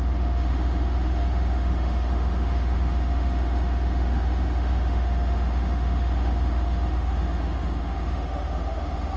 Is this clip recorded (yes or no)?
no